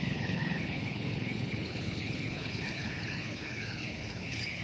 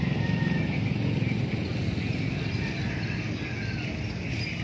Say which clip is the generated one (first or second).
first